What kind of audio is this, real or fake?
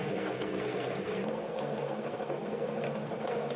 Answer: fake